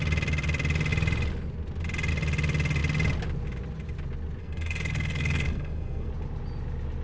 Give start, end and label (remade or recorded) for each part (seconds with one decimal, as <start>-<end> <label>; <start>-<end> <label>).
0.0-4.4 recorded; 4.4-6.1 remade; 6.1-7.0 recorded